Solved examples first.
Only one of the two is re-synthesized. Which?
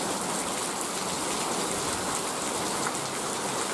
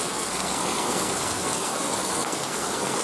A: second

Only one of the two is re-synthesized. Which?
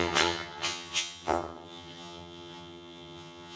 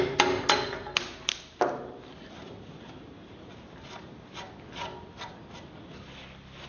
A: first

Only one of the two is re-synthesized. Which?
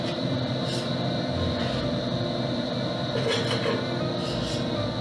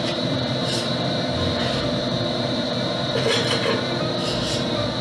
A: second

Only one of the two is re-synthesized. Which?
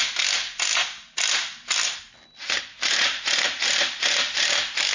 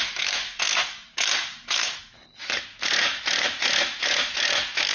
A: second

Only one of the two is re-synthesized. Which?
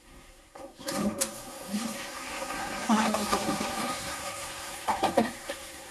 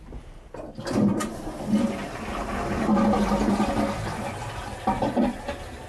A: first